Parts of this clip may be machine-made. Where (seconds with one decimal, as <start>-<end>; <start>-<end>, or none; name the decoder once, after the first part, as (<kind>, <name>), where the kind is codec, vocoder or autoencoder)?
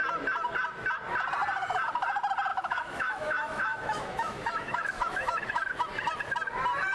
2.5-5.7 (autoencoder, DAC-VAE)